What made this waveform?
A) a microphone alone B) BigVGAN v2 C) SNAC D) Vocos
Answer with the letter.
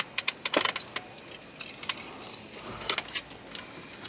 A